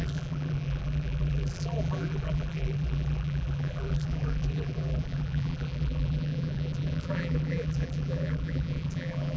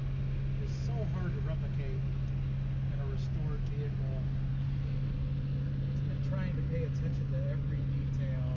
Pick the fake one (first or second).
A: first